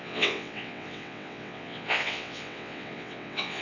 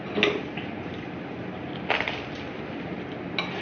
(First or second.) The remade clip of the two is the first